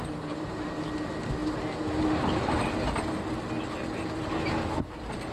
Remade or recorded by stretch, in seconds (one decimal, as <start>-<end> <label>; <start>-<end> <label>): 0.0-5.3 recorded